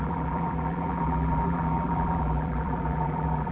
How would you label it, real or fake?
fake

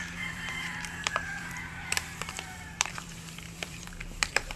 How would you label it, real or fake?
fake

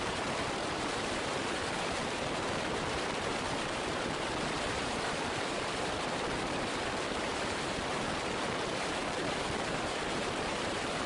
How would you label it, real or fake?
fake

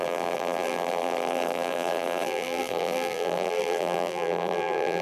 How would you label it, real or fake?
fake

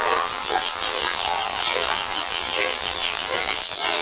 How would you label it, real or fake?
fake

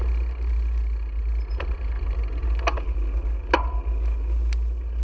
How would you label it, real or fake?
real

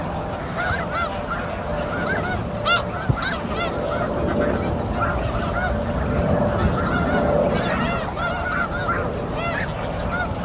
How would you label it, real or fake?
real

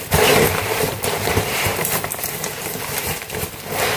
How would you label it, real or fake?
fake